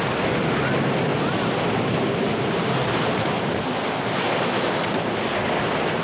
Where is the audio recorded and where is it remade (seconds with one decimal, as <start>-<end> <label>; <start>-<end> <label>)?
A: 0.0-6.0 recorded